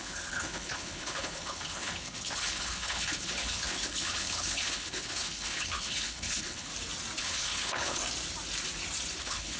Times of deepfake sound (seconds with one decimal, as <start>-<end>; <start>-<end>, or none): 0.0-6.7; 7.2-8.0; 9.2-9.6